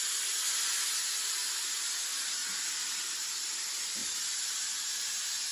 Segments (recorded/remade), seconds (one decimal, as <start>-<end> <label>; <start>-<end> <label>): 0.0-1.4 remade; 1.4-2.0 recorded; 2.0-2.4 remade; 2.4-3.0 recorded; 3.0-5.5 remade